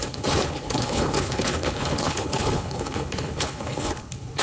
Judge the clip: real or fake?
fake